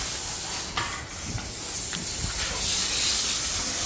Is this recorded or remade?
recorded